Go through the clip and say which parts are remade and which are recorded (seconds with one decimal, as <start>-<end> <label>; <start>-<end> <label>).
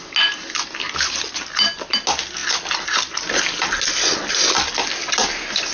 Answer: 0.0-5.7 recorded